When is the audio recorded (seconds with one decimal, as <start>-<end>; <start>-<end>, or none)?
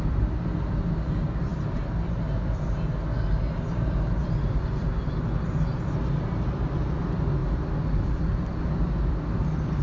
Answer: 0.0-9.8